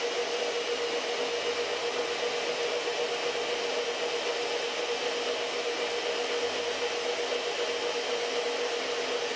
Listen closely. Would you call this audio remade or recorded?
recorded